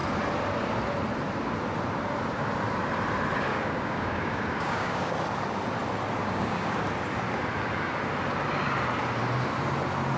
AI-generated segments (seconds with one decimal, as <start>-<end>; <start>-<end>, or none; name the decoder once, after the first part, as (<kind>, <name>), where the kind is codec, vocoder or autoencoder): 3.5-5.1 (codec, DAC); 6.2-6.8